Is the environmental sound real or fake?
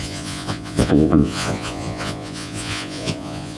fake